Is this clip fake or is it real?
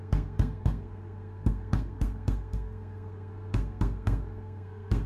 fake